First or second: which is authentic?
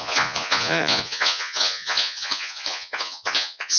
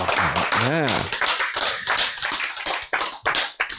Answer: second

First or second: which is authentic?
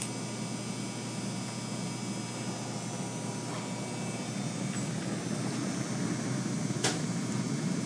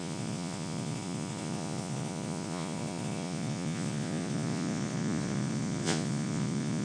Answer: first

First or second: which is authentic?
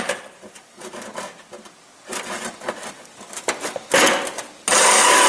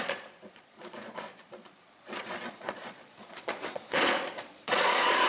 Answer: first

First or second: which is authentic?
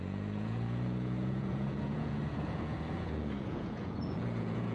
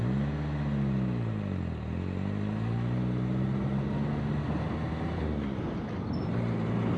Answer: second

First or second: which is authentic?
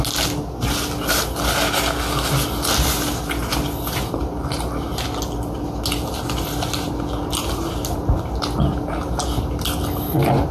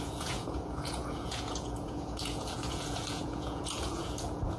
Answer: first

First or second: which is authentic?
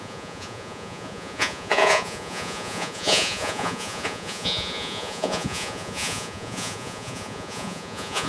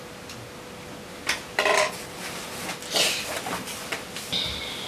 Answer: second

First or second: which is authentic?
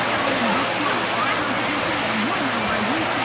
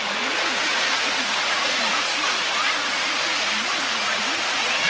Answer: first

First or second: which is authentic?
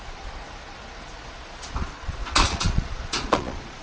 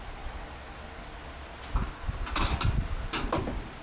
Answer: second